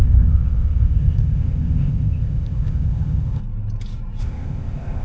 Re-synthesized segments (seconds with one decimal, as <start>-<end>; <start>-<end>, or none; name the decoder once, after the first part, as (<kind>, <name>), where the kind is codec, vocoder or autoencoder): 0.0-3.4 (codec, ZipCodec); 4.2-5.0